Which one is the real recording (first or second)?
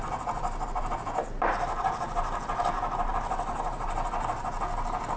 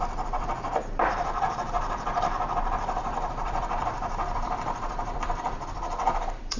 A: first